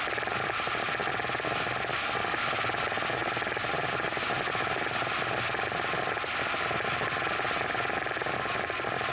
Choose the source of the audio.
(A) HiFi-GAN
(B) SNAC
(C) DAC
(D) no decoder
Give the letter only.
D